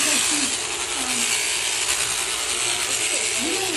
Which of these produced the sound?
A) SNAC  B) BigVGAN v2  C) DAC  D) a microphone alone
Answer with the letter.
D